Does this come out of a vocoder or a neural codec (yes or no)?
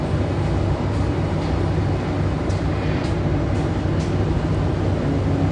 no